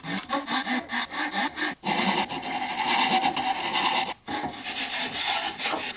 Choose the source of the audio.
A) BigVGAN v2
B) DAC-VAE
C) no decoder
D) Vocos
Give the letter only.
C